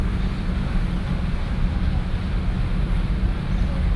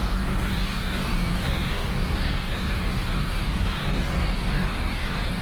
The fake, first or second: second